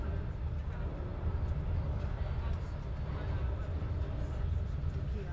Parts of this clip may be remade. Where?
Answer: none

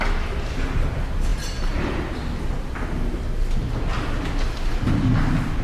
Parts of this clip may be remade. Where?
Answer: none

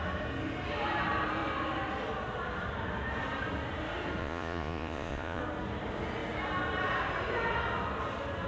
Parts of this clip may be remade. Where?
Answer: 4.2-5.4 (vocoder, Vocos)

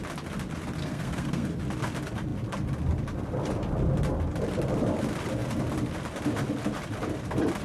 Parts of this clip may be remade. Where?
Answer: 0.8-1.6 (codec, SNAC)